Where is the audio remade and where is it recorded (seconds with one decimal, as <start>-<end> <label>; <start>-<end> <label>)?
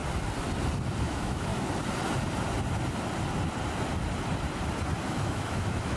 0.0-1.0 recorded; 1.0-1.5 remade; 1.5-5.1 recorded; 5.1-6.0 remade